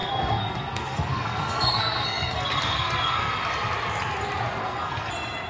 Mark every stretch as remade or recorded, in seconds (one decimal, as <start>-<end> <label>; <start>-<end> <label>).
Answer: 0.0-3.3 remade; 3.3-4.6 recorded; 4.6-5.1 remade; 5.1-5.5 recorded